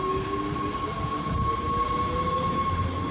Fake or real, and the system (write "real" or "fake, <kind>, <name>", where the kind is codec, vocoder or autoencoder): real